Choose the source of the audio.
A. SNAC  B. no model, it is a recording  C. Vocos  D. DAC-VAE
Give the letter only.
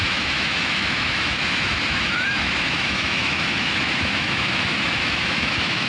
D